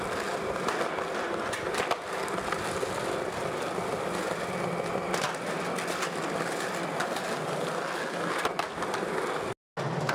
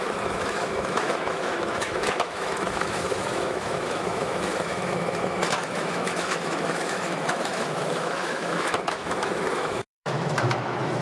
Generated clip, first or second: second